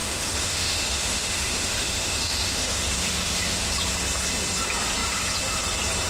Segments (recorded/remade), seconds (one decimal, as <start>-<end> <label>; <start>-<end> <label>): 0.0-3.7 remade; 3.7-6.1 recorded